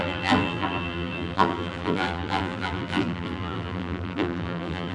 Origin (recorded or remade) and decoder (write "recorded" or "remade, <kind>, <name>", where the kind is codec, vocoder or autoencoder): remade, vocoder, BigVGAN v2